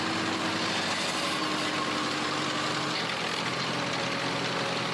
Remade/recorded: recorded